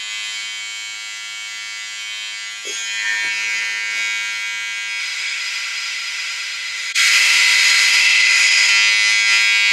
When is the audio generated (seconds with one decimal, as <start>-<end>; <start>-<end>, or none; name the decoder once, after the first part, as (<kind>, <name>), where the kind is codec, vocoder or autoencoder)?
5.0-8.7 (autoencoder, DAC-VAE)